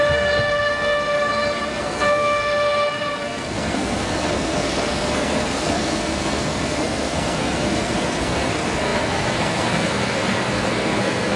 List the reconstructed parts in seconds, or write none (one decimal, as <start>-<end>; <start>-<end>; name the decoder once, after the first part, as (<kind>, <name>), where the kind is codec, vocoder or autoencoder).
0.0-11.4 (codec, SNAC)